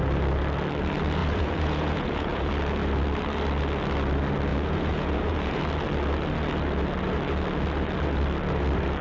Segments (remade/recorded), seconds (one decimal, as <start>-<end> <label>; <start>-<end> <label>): 0.0-1.2 recorded; 1.2-2.5 remade; 2.5-4.5 recorded; 4.5-5.6 remade; 5.6-9.0 recorded

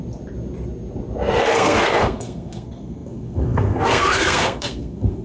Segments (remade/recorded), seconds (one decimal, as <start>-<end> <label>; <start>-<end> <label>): 0.0-1.4 recorded; 1.4-5.2 remade

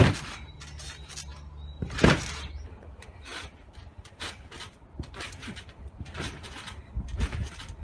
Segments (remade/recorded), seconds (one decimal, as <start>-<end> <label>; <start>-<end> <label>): 0.0-7.8 recorded

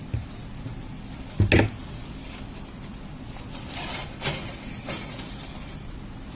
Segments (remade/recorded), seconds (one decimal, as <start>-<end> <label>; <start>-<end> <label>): 0.0-6.3 recorded

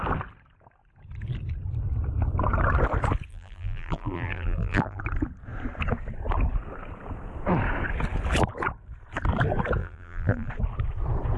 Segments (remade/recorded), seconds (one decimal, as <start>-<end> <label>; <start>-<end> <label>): 0.0-3.3 recorded; 3.3-5.0 remade; 5.0-9.8 recorded; 9.8-10.5 remade; 10.5-11.4 recorded

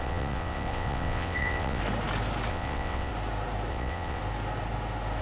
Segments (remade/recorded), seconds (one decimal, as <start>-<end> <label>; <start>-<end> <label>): 0.0-1.8 remade; 1.8-2.5 recorded; 2.5-3.1 remade; 3.1-3.7 recorded; 3.7-4.2 remade; 4.2-5.2 recorded

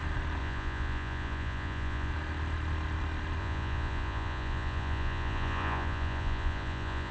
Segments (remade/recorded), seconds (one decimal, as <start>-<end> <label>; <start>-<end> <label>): 0.0-0.4 recorded; 0.4-2.1 remade; 2.1-3.4 recorded; 3.4-7.1 remade

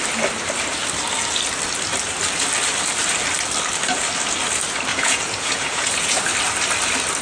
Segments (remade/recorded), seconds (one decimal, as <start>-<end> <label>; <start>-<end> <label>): 0.0-4.9 recorded; 4.9-6.2 remade; 6.2-7.2 recorded